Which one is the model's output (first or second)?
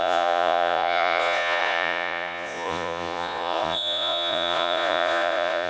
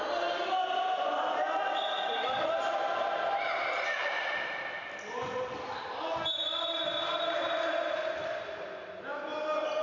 first